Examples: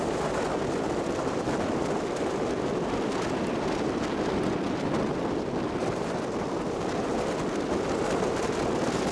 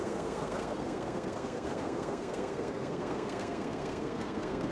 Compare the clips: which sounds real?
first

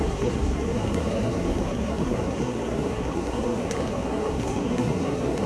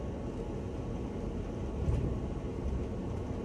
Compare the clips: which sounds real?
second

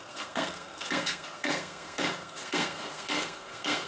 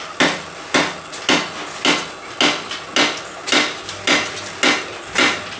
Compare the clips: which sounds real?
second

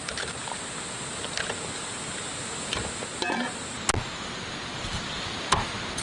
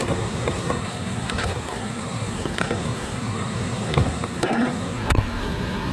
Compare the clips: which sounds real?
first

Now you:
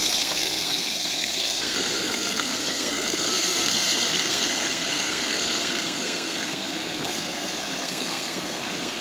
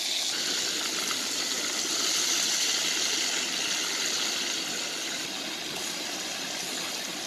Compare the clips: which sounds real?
second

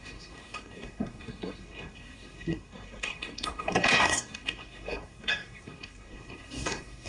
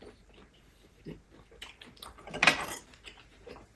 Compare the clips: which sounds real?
second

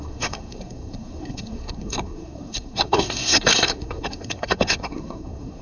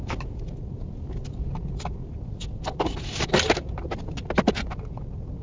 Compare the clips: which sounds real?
second